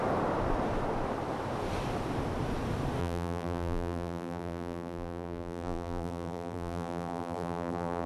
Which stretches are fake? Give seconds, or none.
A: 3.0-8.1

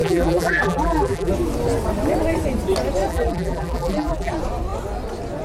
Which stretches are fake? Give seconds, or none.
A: 0.0-1.3; 3.1-4.3

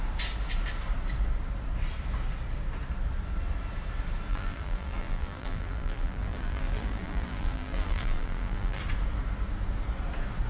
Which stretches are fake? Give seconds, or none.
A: 4.3-8.8

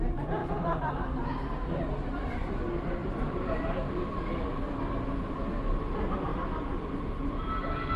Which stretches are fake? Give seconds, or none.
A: 3.0-4.4

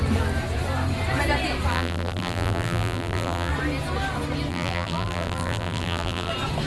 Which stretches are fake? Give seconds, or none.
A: 1.7-3.5; 4.5-6.3